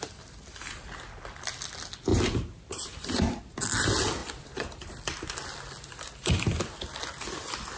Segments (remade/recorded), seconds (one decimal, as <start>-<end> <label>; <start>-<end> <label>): 0.0-2.1 recorded; 2.1-3.4 remade; 3.4-4.2 recorded; 4.2-4.9 remade; 4.9-7.8 recorded